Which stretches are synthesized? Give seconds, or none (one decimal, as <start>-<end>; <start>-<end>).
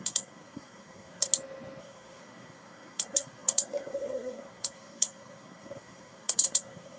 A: 0.0-1.3; 1.8-7.0